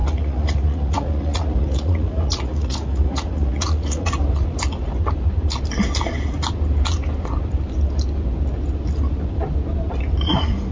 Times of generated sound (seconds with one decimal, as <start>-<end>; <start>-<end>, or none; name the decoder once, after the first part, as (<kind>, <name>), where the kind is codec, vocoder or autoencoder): 0.0-4.1 (vocoder, Vocos)